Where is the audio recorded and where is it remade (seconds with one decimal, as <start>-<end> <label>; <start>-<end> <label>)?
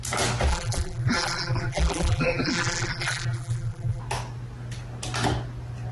0.0-0.5 recorded; 0.5-4.0 remade; 4.0-5.9 recorded